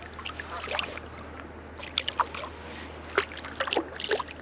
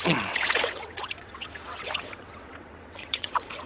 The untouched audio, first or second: first